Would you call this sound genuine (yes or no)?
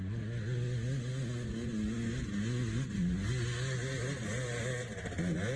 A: yes